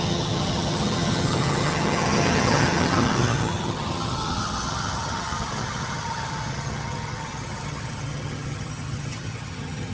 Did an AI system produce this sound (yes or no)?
yes